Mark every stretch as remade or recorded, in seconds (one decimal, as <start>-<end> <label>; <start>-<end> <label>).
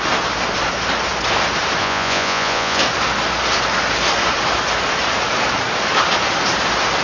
0.0-1.8 recorded; 1.8-2.8 remade; 2.8-7.0 recorded